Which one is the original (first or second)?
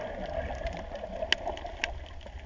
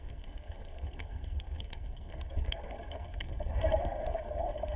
first